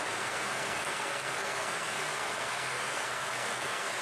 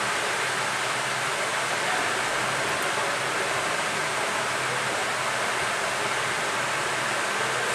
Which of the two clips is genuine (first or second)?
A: second